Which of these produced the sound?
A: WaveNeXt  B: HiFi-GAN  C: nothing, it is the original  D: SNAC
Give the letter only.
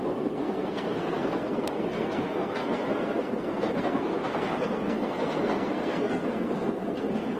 D